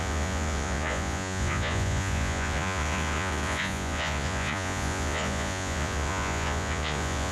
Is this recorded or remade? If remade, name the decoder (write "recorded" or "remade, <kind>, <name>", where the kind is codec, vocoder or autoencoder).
remade, vocoder, Vocos